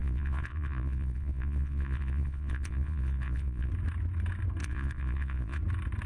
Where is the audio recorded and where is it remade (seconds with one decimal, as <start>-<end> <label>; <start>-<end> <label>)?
0.0-3.7 remade; 3.7-4.6 recorded; 4.6-5.6 remade; 5.6-6.1 recorded